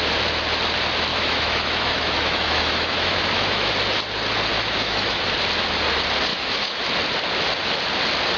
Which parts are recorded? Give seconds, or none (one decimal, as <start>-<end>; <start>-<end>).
0.0-1.1; 3.7-4.5; 5.2-6.3; 6.8-8.4